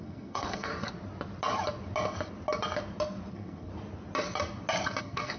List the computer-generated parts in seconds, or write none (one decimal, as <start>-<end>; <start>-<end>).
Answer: 0.0-0.7; 3.3-3.7; 5.0-5.4